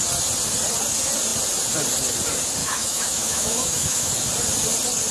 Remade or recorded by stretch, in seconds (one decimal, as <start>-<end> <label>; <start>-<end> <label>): 0.0-2.6 recorded; 2.6-4.1 remade; 4.1-5.1 recorded